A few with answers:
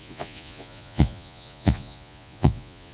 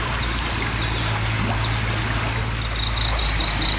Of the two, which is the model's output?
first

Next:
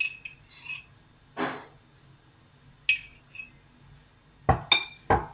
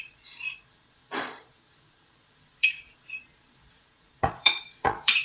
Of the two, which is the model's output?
second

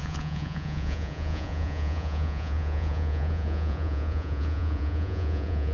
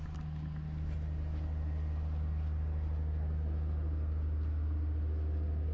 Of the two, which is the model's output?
first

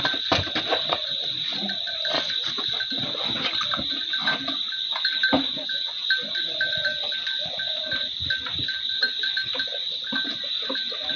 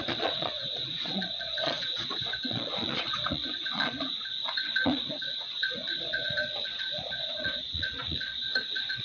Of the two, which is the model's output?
second